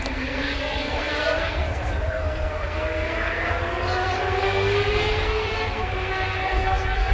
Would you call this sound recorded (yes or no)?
no